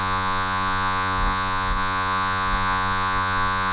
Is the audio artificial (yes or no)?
yes